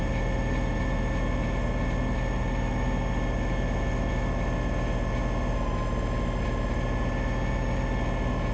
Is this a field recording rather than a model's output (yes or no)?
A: yes